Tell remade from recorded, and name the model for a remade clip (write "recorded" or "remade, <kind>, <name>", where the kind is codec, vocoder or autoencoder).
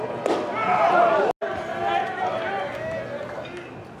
recorded